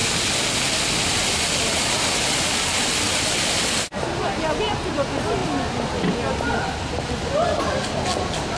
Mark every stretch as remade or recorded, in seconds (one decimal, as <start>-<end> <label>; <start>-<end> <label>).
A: 0.0-8.6 recorded